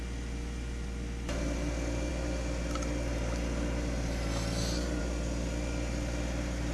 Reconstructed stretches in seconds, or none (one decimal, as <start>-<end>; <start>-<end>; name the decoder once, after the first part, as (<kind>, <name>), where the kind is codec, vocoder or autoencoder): none